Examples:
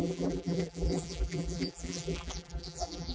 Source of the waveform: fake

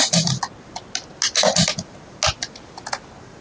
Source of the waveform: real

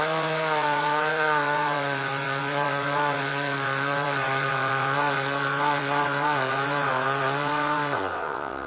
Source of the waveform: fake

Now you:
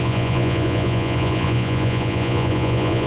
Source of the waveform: fake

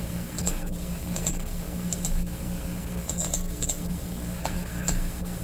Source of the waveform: fake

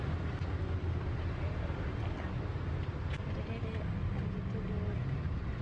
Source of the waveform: real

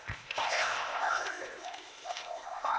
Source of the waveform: fake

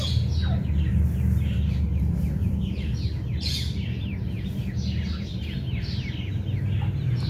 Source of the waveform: real